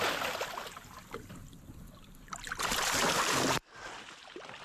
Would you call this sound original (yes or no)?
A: yes